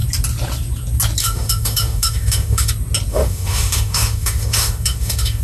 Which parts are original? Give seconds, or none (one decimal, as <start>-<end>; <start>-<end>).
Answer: 0.0-1.2; 2.7-3.1